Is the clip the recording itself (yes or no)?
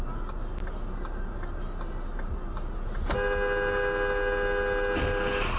yes